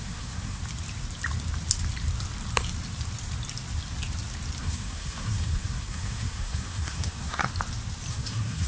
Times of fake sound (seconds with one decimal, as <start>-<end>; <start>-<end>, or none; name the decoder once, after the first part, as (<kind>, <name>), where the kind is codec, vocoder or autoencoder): 0.0-0.6 (codec, SNAC); 4.6-7.5; 8.1-8.7